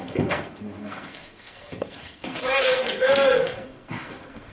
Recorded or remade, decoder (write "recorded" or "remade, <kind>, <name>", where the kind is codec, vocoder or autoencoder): remade, codec, SNAC